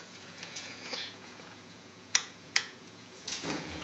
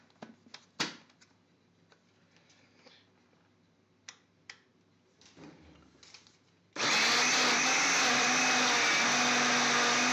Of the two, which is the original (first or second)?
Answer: second